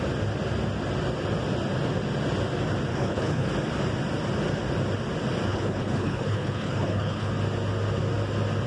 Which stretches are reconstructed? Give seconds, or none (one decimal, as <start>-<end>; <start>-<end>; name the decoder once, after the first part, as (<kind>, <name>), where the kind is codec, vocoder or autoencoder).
2.9-3.5 (codec, HILCodec); 5.5-7.3